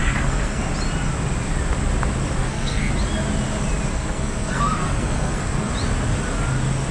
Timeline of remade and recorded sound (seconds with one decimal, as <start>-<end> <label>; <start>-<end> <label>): 0.0-0.6 remade; 0.6-2.4 recorded; 2.4-2.9 remade; 2.9-3.9 recorded; 3.9-5.7 remade; 5.7-6.9 recorded